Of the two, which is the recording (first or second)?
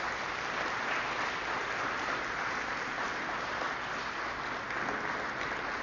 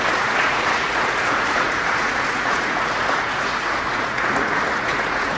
first